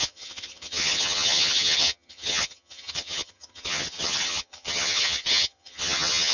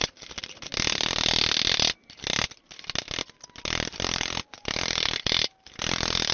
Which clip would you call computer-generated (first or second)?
first